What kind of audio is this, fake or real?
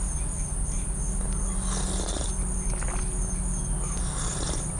real